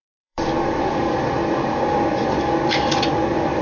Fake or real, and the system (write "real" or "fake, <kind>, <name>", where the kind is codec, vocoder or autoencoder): fake, vocoder, BigVGAN v2